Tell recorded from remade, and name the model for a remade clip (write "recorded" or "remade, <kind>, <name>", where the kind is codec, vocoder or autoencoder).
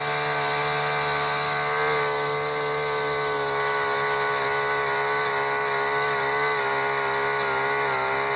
recorded